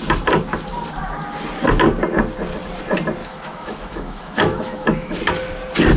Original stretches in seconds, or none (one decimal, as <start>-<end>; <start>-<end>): 0.0-3.2; 5.2-6.0